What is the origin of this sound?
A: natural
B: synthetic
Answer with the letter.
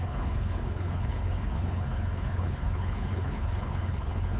B